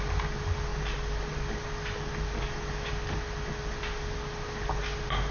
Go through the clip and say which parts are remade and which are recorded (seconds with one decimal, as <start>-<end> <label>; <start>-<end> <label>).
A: 0.0-5.3 recorded